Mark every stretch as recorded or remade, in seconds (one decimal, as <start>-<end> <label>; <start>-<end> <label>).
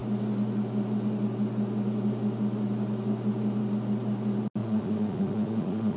0.0-4.6 recorded; 4.6-6.0 remade